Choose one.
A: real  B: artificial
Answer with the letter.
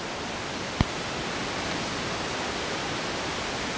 A